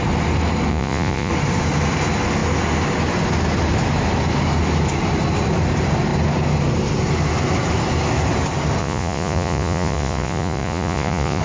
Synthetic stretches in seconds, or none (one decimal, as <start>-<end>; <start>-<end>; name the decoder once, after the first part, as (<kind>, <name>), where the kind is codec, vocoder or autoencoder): 0.7-1.3 (vocoder, Vocos); 8.8-11.4